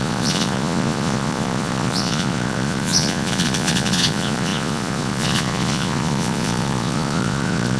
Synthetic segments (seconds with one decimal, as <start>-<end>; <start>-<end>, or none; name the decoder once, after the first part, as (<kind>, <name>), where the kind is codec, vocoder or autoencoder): 0.0-7.8 (vocoder, Vocos)